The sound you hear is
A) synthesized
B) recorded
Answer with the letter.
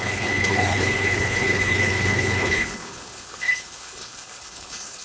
A